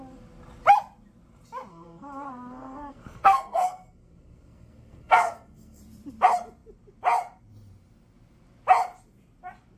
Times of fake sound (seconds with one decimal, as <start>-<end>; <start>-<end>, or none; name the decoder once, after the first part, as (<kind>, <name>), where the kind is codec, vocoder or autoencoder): 1.7-5.8 (codec, SNAC)